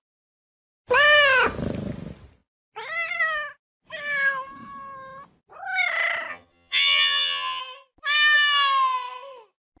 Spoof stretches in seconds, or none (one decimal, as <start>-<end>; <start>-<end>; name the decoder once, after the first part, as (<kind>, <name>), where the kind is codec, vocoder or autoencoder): 6.3-7.6 (vocoder, HiFi-GAN)